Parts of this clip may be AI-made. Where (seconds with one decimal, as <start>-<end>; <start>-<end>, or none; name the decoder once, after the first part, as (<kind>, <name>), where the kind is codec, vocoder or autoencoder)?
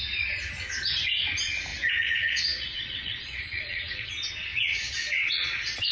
1.7-4.1 (vocoder, Vocos); 4.5-5.9